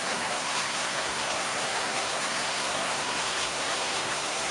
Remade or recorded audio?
remade